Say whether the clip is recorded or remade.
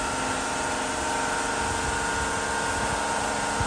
recorded